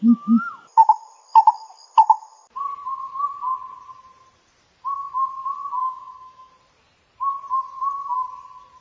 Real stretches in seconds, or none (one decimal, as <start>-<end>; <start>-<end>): 0.0-5.8; 6.5-8.8